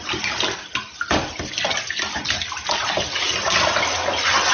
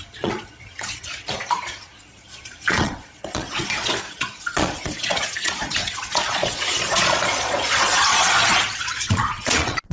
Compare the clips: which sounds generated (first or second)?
second